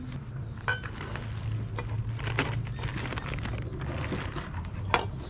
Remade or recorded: recorded